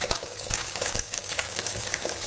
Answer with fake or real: fake